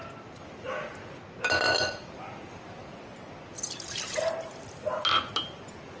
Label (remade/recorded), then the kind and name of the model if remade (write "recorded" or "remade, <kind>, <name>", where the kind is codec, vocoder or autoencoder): recorded